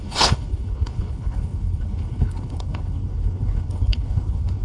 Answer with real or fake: fake